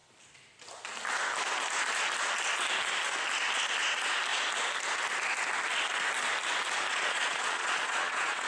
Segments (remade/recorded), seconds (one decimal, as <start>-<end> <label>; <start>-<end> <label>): 0.0-6.9 recorded; 6.9-8.5 remade